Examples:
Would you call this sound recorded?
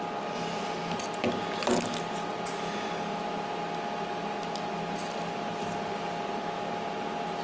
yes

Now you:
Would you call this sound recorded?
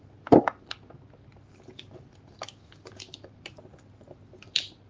no